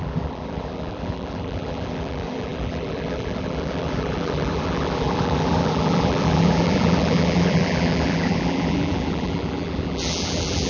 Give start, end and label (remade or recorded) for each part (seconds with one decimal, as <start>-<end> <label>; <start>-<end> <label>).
0.0-10.7 remade